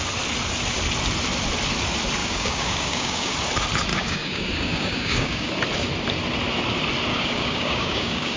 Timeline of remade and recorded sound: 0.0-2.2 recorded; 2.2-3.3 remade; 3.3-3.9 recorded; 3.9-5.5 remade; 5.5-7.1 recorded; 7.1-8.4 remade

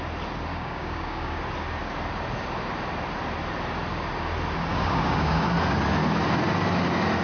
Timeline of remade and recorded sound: 0.0-0.5 recorded; 0.5-1.4 remade; 1.4-4.7 recorded; 4.7-5.5 remade; 5.5-7.2 recorded

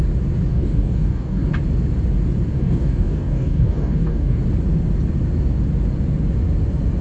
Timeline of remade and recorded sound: 0.0-0.5 recorded; 0.5-1.5 remade; 1.5-2.5 recorded; 2.5-4.4 remade; 4.4-7.0 recorded

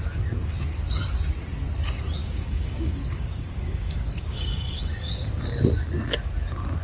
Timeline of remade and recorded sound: 0.0-2.2 recorded; 2.2-4.8 remade; 4.8-6.8 recorded

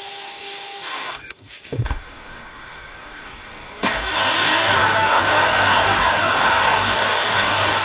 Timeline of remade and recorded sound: 0.0-7.8 remade

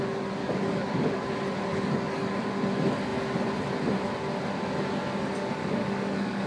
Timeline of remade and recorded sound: 0.0-0.4 recorded; 0.4-1.2 remade; 1.2-1.7 recorded; 1.7-2.4 remade; 2.4-5.6 recorded; 5.6-6.5 remade

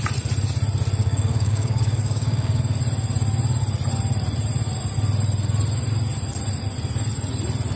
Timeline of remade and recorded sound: 0.0-1.0 recorded; 1.0-2.6 remade; 2.6-7.8 recorded